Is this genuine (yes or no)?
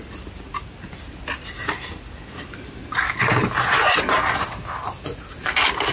yes